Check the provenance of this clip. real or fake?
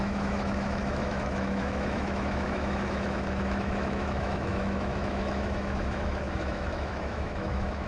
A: fake